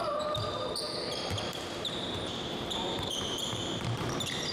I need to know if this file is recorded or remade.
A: remade